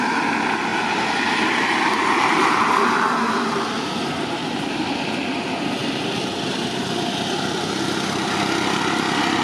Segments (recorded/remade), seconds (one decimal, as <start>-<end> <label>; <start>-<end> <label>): 0.0-9.4 recorded